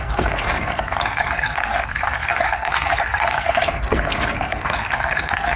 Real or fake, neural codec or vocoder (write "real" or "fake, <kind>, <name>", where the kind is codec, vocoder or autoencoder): fake, codec, SNAC